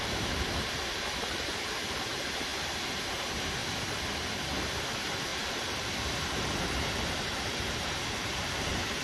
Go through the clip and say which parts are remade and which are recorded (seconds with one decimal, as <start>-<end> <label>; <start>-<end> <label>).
0.0-2.5 remade; 2.5-3.1 recorded; 3.1-3.6 remade; 3.6-4.3 recorded; 4.3-9.0 remade